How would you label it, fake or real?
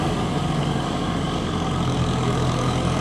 fake